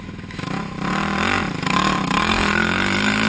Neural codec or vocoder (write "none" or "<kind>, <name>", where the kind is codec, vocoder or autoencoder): autoencoder, DAC-VAE